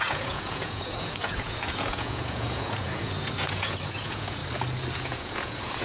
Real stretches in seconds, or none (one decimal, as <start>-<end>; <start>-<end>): 4.4-4.9